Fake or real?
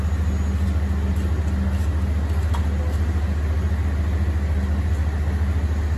real